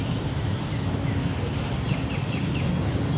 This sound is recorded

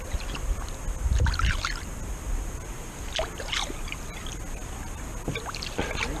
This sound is recorded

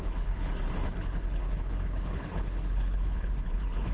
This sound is remade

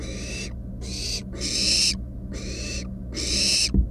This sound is recorded